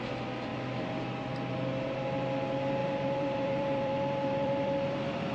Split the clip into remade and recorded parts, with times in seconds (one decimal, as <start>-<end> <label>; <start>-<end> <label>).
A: 0.0-2.8 recorded; 2.8-5.3 remade